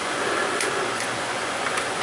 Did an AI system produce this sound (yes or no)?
yes